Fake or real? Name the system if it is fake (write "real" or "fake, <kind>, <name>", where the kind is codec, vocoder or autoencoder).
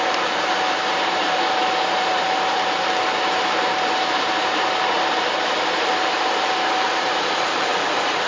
fake, vocoder, BigVGAN v2